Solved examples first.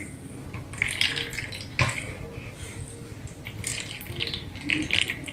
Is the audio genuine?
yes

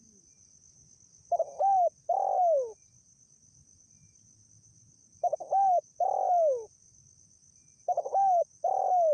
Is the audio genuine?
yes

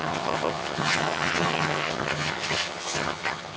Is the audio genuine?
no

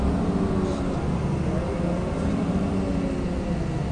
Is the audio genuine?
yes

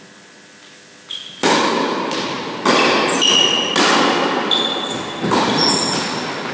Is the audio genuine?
yes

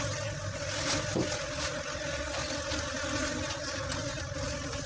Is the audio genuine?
yes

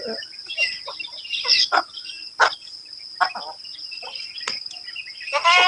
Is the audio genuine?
yes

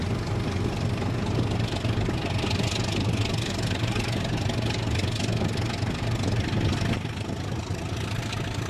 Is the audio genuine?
yes